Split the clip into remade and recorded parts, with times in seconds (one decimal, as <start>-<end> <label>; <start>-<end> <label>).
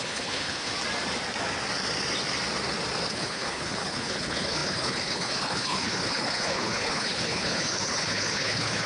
0.0-0.7 remade; 0.7-3.1 recorded; 3.1-8.9 remade